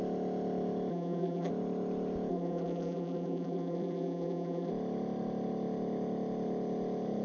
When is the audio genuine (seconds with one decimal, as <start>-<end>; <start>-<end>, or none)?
0.0-0.9; 1.5-2.3; 4.7-7.2